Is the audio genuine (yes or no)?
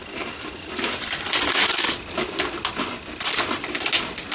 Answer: yes